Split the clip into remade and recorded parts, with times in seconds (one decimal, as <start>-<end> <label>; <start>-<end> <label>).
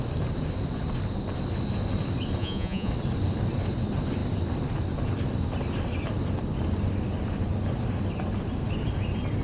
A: 0.0-2.4 recorded; 2.4-2.9 remade; 2.9-9.4 recorded